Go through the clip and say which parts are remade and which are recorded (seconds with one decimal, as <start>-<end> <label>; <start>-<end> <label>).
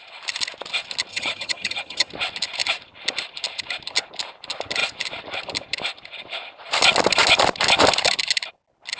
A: 0.0-1.1 recorded; 1.1-2.1 remade; 2.1-9.0 recorded